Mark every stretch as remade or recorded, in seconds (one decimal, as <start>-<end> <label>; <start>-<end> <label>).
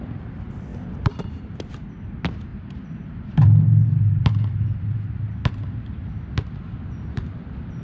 0.0-0.7 recorded; 0.7-1.4 remade; 1.4-2.5 recorded; 2.5-6.1 remade; 6.1-7.8 recorded